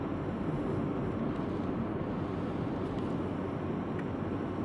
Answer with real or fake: real